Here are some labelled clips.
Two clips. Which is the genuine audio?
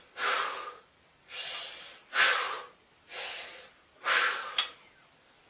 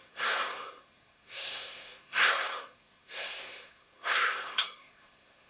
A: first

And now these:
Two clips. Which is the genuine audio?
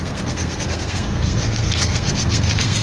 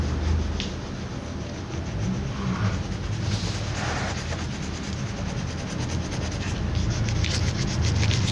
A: second